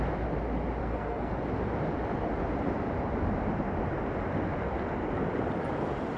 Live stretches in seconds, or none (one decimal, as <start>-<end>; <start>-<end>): 0.0-0.8; 1.3-6.2